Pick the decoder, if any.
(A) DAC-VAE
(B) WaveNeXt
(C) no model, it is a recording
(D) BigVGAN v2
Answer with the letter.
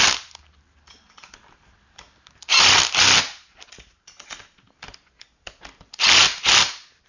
C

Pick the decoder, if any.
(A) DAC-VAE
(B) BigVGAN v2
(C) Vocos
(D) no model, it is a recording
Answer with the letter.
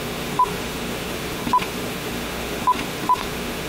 A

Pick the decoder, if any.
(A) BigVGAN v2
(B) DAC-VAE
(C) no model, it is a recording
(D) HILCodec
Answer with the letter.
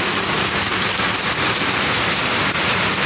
C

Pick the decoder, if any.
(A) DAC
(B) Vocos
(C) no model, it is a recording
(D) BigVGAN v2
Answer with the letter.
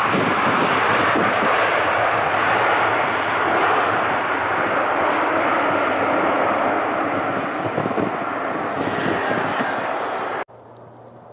C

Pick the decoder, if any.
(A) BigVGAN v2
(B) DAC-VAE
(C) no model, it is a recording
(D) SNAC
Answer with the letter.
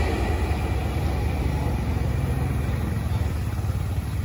C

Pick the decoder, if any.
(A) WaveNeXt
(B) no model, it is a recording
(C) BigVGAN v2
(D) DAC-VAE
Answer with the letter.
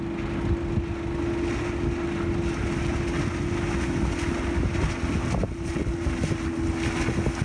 B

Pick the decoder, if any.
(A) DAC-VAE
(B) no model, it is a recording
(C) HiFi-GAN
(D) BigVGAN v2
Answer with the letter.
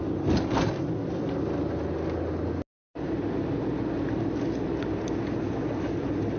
B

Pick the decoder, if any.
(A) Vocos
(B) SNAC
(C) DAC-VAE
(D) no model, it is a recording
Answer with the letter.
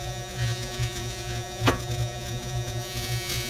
A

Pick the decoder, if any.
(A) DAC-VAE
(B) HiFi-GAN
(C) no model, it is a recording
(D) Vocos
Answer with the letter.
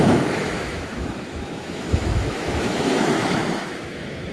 A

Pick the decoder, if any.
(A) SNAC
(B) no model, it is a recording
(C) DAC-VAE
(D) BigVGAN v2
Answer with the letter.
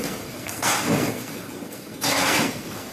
A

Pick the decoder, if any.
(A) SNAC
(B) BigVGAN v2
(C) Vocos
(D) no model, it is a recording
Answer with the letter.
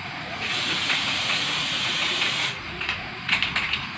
C